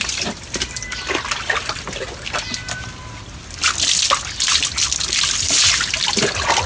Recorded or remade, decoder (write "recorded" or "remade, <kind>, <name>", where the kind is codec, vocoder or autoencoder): recorded